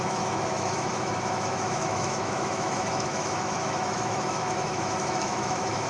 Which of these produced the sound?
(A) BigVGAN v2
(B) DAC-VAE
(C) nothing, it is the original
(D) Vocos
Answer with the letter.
B